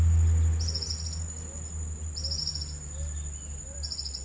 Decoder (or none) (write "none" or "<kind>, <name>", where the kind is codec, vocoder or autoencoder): none